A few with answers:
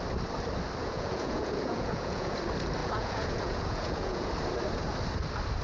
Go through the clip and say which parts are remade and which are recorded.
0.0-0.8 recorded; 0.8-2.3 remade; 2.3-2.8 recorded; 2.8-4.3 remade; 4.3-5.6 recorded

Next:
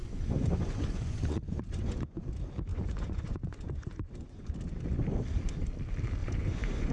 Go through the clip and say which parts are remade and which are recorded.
0.0-2.3 remade; 2.3-2.7 recorded; 2.7-4.5 remade; 4.5-6.2 recorded; 6.2-6.9 remade

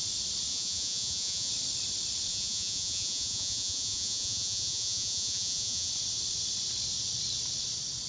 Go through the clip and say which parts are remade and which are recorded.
0.0-0.5 recorded; 0.5-1.5 remade; 1.5-2.3 recorded; 2.3-5.9 remade; 5.9-8.1 recorded